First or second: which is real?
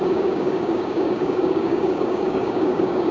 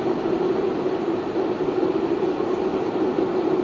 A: second